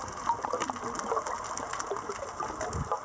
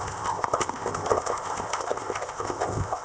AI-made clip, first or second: second